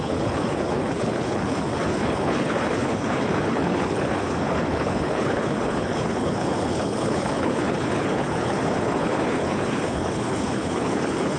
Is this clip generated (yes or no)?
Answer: yes